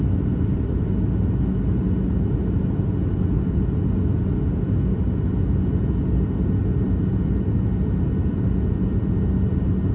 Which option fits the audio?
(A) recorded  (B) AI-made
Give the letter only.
A